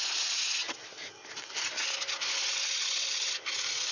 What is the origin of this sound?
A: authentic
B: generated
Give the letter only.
A